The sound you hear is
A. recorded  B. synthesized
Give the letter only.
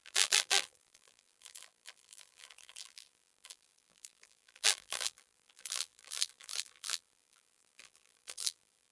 B